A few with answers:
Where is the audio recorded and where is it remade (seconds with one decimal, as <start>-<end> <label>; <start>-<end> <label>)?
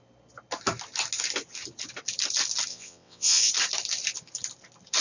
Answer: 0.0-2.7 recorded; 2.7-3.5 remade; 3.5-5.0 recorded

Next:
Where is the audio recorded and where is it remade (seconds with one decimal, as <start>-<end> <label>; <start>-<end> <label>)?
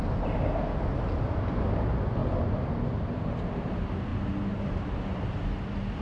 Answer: 0.0-6.0 recorded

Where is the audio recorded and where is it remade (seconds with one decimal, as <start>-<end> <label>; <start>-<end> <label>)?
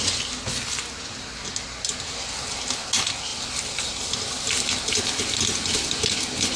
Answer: 0.0-6.6 recorded